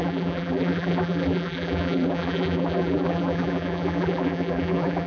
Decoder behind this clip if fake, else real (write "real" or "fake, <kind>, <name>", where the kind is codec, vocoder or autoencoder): fake, vocoder, BigVGAN v2